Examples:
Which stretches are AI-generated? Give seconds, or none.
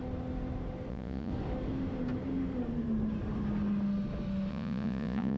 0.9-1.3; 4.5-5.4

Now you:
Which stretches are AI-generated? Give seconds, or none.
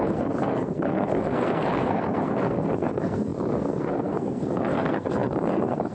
0.0-5.9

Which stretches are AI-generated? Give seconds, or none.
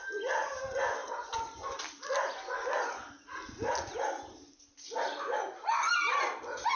1.0-1.8; 3.9-4.5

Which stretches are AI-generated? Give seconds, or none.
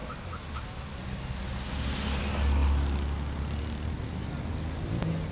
none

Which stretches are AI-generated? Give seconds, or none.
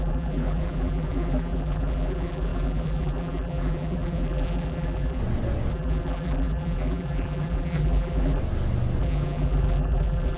0.0-5.2; 5.7-8.4; 9.0-10.4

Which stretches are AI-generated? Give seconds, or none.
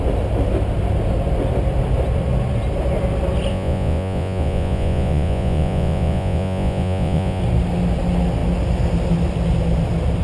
3.5-7.4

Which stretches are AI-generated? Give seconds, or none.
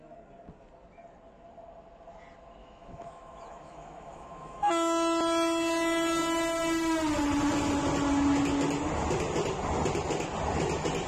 2.6-4.7